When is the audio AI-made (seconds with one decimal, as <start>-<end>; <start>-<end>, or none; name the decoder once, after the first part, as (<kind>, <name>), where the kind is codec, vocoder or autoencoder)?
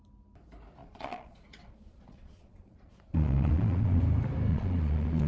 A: 0.8-4.0 (vocoder, Vocos); 4.5-5.3